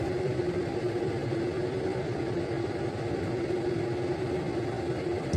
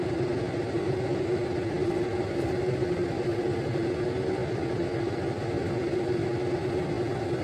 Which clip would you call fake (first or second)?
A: first